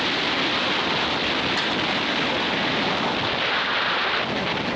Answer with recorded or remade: recorded